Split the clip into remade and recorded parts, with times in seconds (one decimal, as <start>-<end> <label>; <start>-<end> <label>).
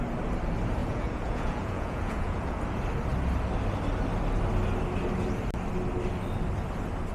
0.0-0.8 recorded; 0.8-2.6 remade; 2.6-7.1 recorded